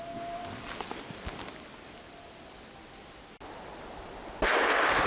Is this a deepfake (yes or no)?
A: no